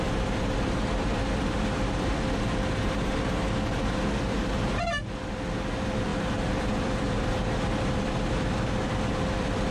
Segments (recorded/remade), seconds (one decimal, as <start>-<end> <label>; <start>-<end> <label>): 0.0-9.7 remade